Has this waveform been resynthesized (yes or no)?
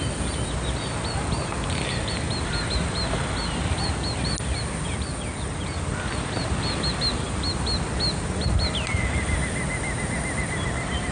no